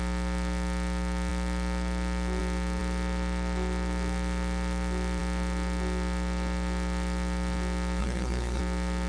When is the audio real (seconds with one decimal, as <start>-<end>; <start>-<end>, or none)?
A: 0.0-8.0; 8.6-9.1